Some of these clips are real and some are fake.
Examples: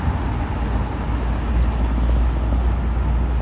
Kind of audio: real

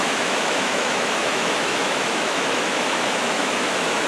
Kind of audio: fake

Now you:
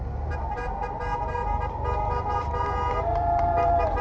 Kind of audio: fake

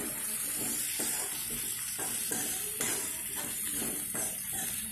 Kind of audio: fake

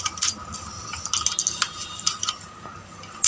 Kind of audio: real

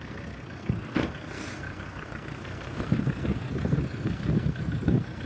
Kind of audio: fake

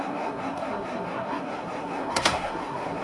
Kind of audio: fake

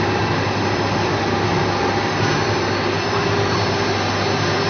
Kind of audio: real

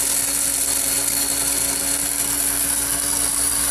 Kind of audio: real